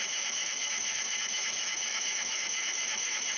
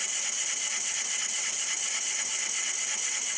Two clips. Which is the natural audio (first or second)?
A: second